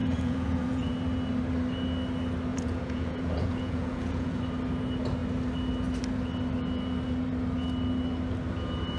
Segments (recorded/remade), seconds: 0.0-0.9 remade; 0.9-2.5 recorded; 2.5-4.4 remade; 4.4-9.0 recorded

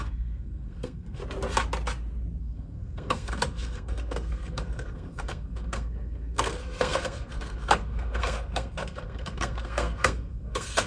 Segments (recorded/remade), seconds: 0.0-1.2 remade; 1.2-2.4 recorded; 2.4-10.9 remade

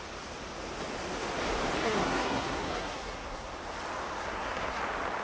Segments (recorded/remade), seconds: 0.0-1.8 recorded; 1.8-3.5 remade; 3.5-4.2 recorded; 4.2-4.8 remade; 4.8-5.2 recorded

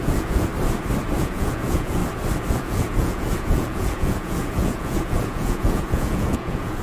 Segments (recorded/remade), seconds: 0.0-0.5 remade; 0.5-1.2 recorded; 1.2-2.0 remade; 2.0-2.5 recorded; 2.5-6.8 remade

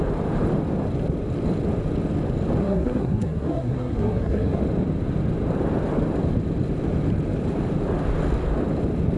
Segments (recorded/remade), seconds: 0.0-2.6 recorded; 2.6-4.6 remade; 4.6-9.2 recorded

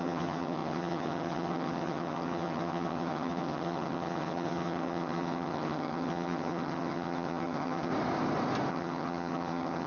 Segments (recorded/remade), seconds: 0.0-7.9 remade; 7.9-8.7 recorded; 8.7-9.9 remade